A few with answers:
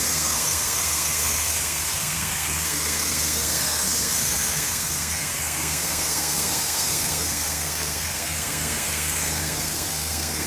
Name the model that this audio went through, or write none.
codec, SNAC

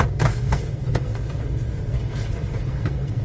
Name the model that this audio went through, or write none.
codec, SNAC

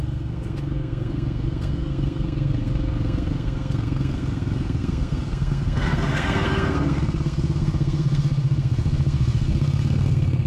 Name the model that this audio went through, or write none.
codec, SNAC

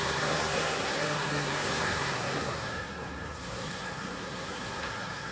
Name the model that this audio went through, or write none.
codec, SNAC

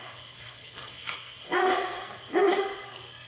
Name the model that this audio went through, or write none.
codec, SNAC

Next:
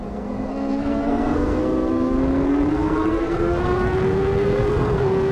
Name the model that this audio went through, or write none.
codec, SNAC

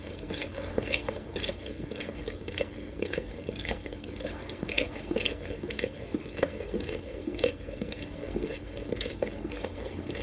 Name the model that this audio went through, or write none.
codec, SNAC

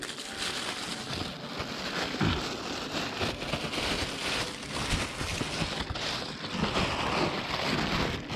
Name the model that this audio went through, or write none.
none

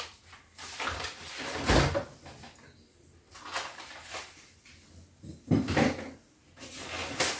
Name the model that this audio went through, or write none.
none